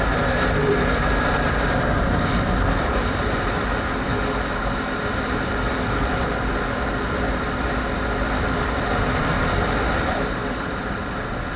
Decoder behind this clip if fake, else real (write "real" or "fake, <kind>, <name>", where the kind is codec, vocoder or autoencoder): real